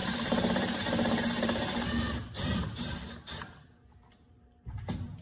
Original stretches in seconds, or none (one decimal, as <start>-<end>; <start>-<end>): 3.1-5.2